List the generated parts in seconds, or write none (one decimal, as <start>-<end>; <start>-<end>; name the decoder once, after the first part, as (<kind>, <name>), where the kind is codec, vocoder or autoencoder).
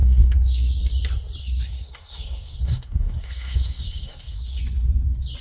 0.0-0.8 (codec, SNAC); 1.4-4.6